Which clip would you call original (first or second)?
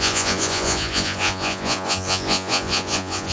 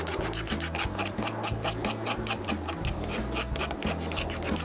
second